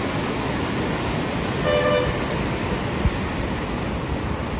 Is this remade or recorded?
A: recorded